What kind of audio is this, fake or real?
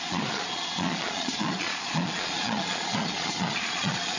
fake